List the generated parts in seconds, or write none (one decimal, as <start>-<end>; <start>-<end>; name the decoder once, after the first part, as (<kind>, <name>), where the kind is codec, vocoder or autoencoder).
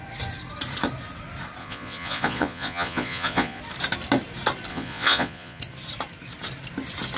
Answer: 1.6-3.6 (vocoder, Vocos); 4.7-5.6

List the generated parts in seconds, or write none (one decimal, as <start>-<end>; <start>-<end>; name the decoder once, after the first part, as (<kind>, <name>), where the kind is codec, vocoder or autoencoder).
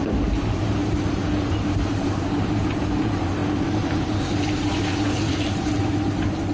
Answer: none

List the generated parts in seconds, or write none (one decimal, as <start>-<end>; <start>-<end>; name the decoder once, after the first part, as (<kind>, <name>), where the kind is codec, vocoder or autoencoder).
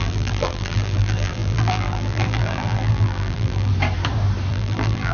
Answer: 0.0-3.7 (vocoder, BigVGAN v2); 4.5-5.1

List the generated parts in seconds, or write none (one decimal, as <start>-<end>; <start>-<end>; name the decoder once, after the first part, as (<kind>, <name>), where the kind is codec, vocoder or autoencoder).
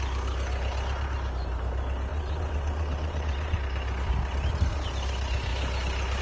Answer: 2.1-3.6 (vocoder, WaveNeXt)